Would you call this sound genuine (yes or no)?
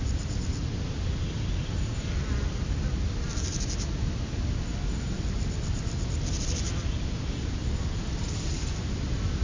yes